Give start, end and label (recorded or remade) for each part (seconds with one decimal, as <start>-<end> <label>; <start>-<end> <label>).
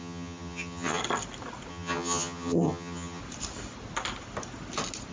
0.0-1.0 remade; 1.0-1.7 recorded; 1.7-3.2 remade; 3.2-5.1 recorded